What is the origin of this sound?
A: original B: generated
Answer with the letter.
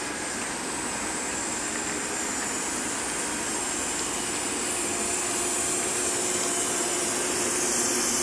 A